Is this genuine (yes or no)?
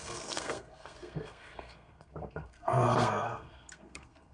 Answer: no